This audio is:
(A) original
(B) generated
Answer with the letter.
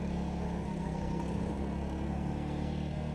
B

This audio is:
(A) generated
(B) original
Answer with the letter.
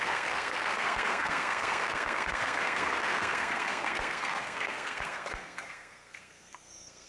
A